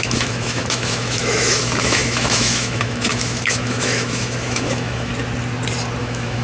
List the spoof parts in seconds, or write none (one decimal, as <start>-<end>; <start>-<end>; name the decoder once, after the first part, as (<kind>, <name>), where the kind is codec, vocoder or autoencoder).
0.0-5.1 (autoencoder, DAC-VAE); 6.0-6.4